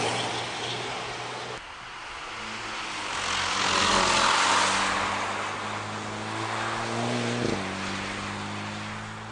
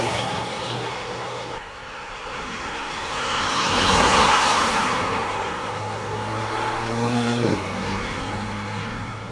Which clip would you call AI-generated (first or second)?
second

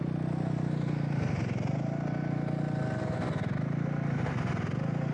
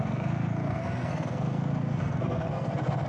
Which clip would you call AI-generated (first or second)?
second